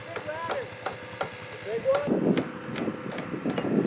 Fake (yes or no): no